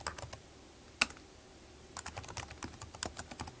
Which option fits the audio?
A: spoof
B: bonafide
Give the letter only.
B